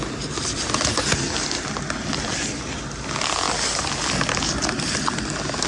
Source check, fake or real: real